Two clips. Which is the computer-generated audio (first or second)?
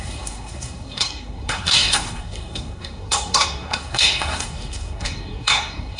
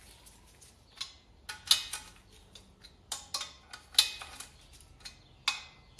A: first